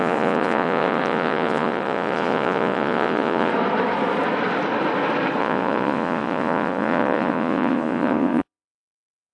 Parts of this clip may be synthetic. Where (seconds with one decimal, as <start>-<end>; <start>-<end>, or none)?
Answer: 0.0-3.5; 5.4-9.3

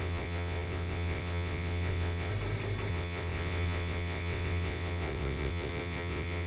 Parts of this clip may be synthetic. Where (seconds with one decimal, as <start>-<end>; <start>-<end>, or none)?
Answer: 0.0-2.3; 2.9-6.5

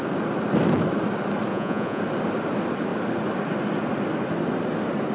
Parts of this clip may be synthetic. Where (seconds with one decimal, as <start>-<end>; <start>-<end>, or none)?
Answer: 1.5-2.0

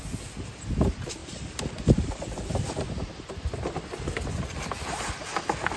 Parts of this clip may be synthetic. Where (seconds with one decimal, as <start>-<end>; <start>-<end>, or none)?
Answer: none

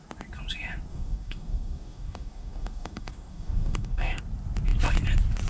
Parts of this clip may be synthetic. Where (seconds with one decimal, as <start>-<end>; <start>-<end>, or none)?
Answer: 0.9-4.2

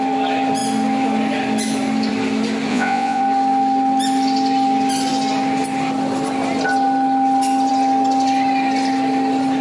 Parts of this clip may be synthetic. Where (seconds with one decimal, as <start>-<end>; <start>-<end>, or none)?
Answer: 2.7-3.2

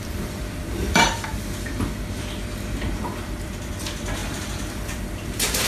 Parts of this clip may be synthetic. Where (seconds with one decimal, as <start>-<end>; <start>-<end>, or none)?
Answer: 0.0-1.3; 3.0-5.7

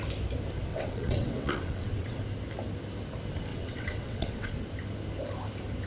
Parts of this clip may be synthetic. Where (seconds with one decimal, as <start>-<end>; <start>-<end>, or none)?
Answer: 0.7-2.2; 3.5-4.5